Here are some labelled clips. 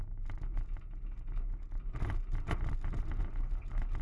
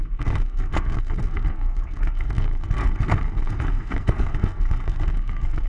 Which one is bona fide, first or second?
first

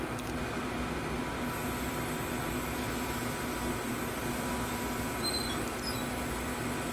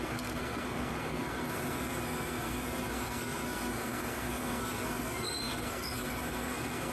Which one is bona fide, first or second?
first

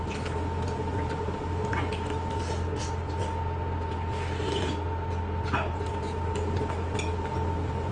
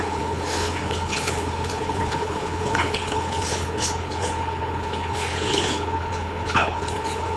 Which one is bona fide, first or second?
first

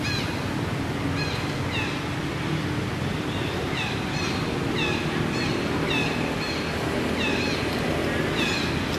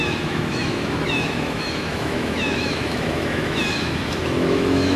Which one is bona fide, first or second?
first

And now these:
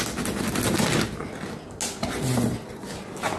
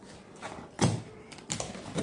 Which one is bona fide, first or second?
first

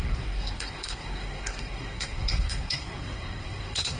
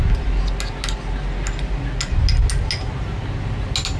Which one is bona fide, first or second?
second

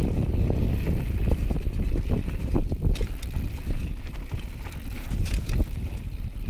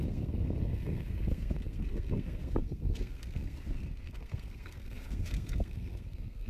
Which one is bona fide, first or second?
first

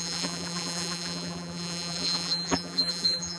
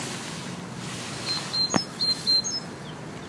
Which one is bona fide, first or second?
second